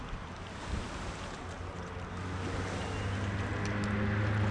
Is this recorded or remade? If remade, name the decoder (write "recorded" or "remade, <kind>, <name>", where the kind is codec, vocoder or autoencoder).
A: recorded